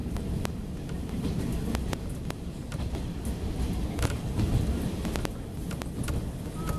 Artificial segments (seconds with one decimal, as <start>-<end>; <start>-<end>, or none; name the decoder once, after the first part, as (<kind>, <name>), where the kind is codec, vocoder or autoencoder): 0.0-1.4 (vocoder, BigVGAN v2); 2.4-4.4